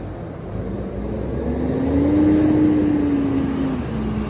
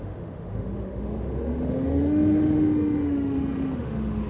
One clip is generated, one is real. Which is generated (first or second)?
second